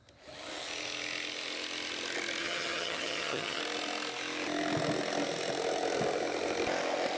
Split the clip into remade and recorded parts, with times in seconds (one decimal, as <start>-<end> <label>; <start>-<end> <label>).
0.0-2.4 recorded; 2.4-3.6 remade; 3.6-7.2 recorded